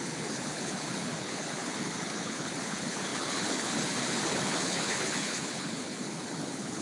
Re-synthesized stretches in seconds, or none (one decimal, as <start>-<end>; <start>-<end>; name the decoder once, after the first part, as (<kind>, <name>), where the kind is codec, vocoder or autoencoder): 0.0-6.8 (codec, HILCodec)